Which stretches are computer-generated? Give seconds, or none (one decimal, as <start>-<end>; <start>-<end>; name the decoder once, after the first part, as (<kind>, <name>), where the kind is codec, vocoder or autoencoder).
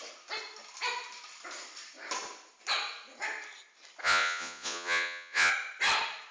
4.0-5.5 (vocoder, Vocos)